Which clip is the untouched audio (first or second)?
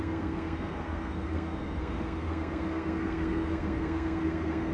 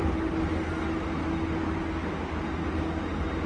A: second